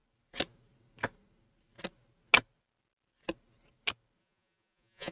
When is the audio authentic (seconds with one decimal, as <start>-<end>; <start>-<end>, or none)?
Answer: 0.0-4.2